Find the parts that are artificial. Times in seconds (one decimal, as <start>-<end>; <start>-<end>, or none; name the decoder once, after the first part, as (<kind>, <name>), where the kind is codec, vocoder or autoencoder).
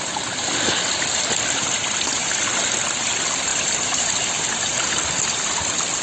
2.2-2.7 (vocoder, BigVGAN v2); 3.5-4.1